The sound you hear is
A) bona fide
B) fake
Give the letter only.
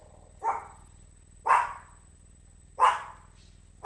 A